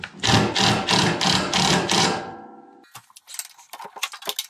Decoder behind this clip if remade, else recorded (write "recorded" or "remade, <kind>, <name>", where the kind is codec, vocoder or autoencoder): recorded